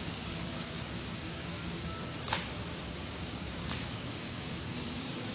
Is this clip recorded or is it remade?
remade